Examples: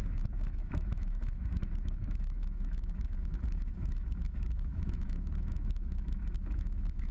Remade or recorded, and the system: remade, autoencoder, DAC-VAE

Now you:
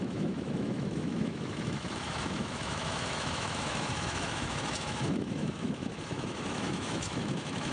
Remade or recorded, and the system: remade, autoencoder, DAC-VAE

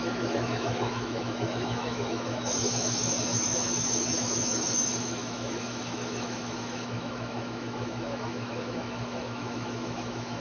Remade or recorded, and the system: remade, autoencoder, DAC-VAE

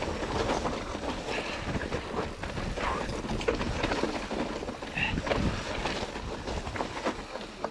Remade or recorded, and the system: recorded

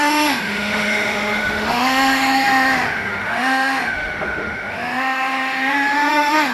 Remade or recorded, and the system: remade, autoencoder, DAC-VAE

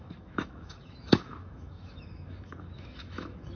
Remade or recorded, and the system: remade, autoencoder, DAC-VAE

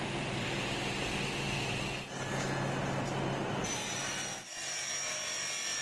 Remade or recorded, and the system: recorded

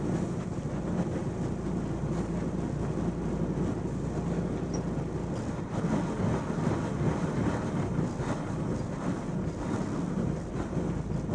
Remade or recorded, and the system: recorded